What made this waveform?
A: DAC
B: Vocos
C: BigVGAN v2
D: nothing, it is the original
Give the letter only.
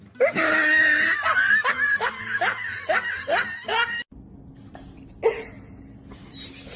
D